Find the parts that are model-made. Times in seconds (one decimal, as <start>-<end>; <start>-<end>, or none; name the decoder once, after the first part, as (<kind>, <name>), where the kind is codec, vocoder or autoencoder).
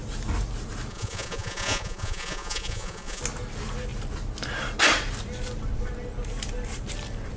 0.9-3.2 (vocoder, Vocos)